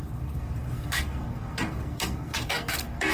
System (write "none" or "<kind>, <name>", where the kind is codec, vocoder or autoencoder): codec, SNAC